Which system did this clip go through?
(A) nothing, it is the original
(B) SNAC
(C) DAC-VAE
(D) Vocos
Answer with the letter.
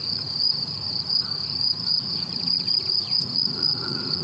D